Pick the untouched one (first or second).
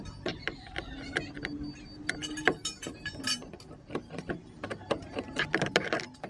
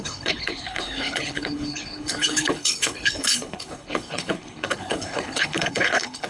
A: first